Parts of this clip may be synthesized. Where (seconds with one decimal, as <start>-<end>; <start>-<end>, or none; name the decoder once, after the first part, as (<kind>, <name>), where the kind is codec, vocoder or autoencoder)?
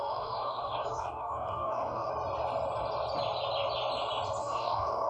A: 0.0-2.1 (codec, DAC); 4.4-5.1